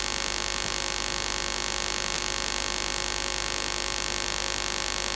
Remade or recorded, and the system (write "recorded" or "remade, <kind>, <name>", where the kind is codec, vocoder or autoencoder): recorded